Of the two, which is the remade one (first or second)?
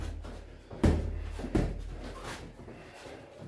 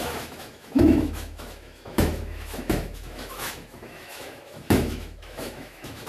second